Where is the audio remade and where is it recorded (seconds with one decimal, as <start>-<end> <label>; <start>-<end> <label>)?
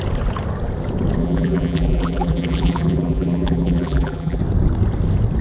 0.0-1.2 recorded; 1.2-4.4 remade; 4.4-5.4 recorded